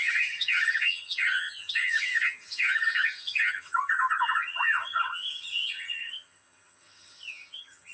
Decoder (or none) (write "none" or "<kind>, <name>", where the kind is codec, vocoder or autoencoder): vocoder, HiFi-GAN